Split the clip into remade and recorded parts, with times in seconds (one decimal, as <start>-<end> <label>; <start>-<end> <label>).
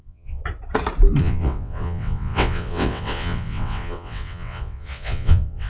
0.0-0.4 remade; 0.4-1.2 recorded; 1.2-5.7 remade